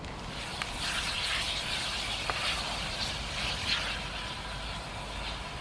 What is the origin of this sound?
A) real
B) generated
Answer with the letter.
A